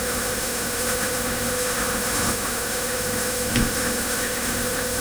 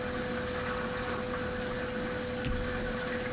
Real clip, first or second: second